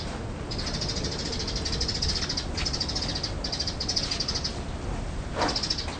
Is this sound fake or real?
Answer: real